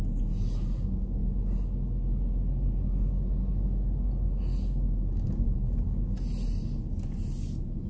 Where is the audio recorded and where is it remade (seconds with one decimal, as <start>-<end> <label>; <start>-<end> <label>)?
0.0-7.9 recorded